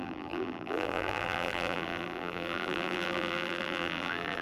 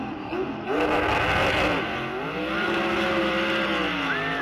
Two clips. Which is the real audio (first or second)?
second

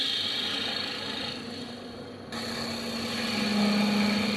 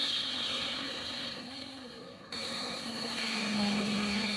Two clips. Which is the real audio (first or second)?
first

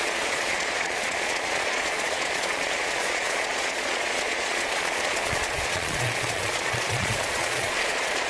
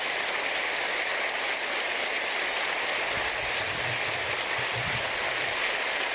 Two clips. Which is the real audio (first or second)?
second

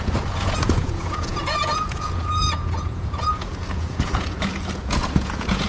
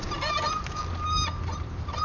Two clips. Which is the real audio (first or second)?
second